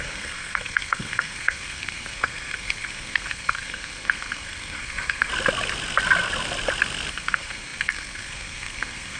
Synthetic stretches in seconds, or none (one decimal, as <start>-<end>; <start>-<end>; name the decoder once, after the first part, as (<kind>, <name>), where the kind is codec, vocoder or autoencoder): 0.0-5.3 (codec, SNAC); 7.1-9.2